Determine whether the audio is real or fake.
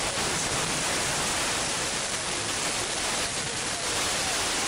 real